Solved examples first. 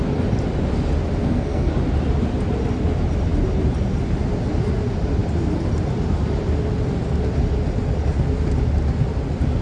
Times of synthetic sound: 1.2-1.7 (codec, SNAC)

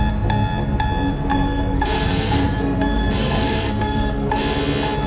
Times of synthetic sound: 1.3-4.4 (codec, SNAC)

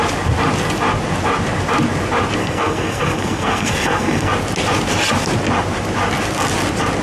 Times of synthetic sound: 2.4-4.3 (codec, SNAC)